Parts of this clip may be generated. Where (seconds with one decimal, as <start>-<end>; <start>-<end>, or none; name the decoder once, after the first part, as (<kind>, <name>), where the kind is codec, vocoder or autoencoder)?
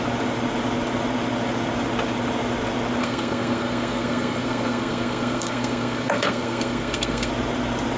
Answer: 3.0-7.3 (codec, SNAC)